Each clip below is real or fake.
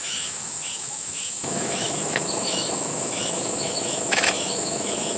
fake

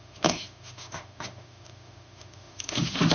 fake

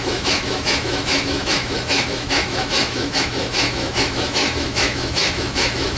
fake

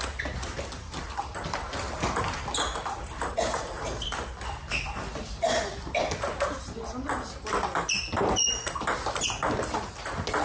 real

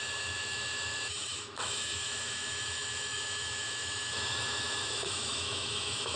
fake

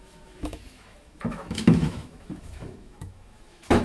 fake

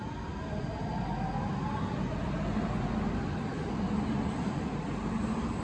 real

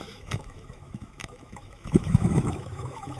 fake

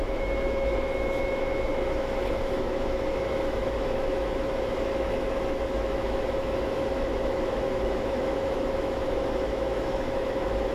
fake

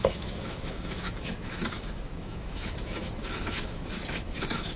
fake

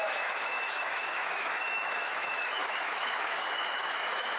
fake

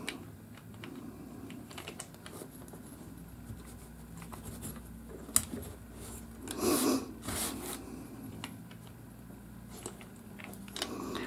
real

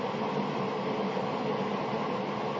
real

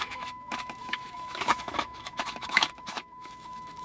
fake